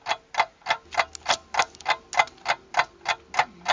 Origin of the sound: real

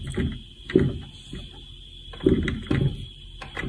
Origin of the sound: real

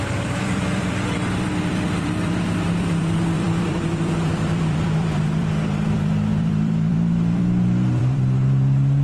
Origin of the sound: fake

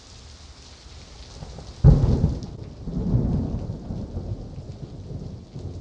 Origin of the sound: real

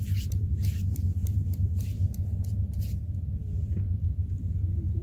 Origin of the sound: real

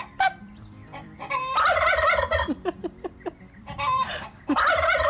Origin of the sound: fake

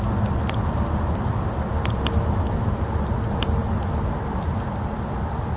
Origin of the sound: real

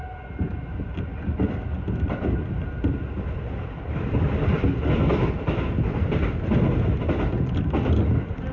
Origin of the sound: real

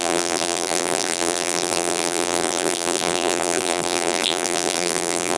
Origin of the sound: fake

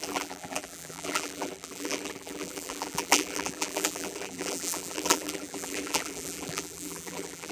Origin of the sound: fake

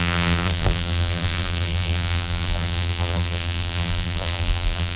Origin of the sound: fake